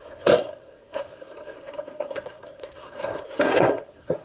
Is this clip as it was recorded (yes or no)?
no